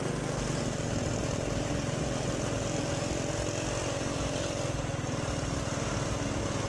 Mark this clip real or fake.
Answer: real